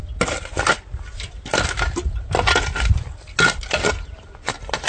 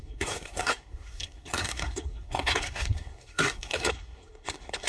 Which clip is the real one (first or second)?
first